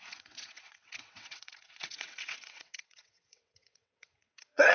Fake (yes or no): yes